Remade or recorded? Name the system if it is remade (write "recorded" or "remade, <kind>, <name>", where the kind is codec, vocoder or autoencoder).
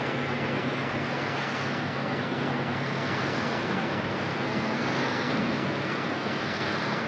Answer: remade, codec, SNAC